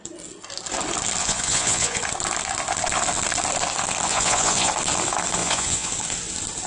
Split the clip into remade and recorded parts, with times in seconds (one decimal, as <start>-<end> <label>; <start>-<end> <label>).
0.0-1.2 recorded; 1.2-2.0 remade; 2.0-4.1 recorded; 4.1-4.7 remade; 4.7-5.4 recorded; 5.4-5.9 remade; 5.9-6.7 recorded